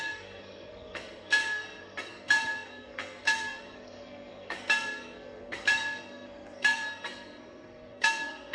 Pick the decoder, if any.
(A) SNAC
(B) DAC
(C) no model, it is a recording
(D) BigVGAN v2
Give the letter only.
A